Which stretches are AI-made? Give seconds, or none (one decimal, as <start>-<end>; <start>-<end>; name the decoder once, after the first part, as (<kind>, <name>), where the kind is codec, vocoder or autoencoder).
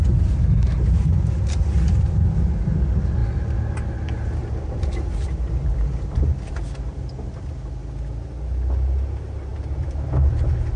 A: none